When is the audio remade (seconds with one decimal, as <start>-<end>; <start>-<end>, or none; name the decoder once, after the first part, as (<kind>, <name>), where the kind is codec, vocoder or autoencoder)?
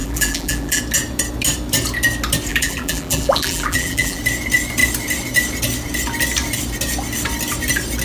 0.0-0.8 (vocoder, BigVGAN v2); 2.5-4.2